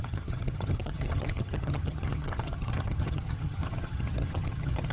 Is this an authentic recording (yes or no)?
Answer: no